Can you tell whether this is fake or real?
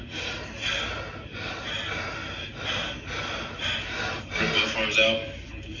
real